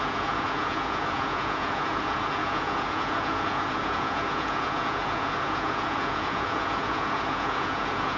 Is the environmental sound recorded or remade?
remade